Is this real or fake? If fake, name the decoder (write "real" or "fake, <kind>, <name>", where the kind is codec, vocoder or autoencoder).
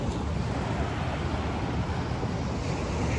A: real